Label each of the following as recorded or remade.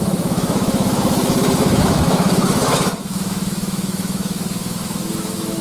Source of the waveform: remade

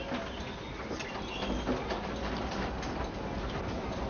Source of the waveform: recorded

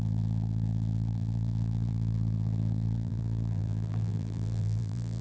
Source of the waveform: remade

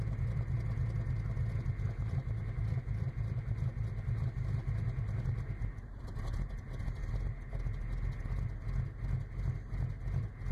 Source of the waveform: recorded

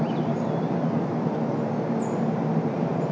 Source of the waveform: recorded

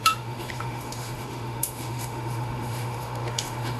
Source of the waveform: remade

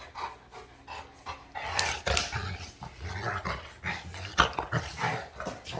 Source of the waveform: recorded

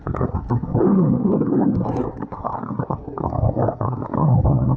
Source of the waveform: remade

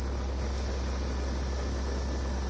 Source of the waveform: recorded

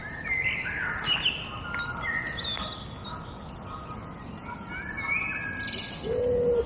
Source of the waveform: recorded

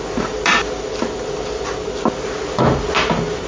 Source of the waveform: recorded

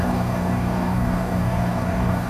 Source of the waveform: remade